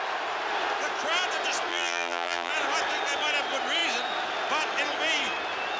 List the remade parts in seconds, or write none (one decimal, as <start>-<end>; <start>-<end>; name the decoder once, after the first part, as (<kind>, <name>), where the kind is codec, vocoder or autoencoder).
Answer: 1.7-2.5 (vocoder, BigVGAN v2)